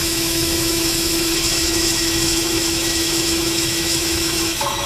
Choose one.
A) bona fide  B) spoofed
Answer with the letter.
B